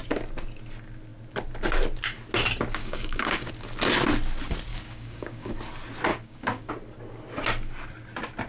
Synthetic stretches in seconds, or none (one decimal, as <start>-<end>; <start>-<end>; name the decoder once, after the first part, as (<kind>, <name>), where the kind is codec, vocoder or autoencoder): 2.8-3.5 (codec, DAC); 4.7-5.5; 6.1-6.7